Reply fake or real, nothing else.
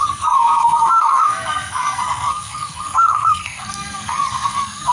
fake